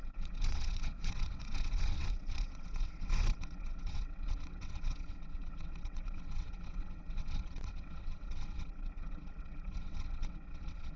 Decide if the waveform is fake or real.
fake